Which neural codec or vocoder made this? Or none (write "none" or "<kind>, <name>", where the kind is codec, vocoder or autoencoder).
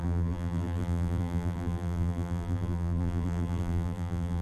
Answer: vocoder, BigVGAN v2